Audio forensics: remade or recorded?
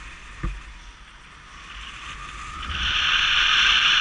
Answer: remade